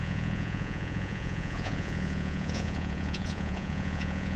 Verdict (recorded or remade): remade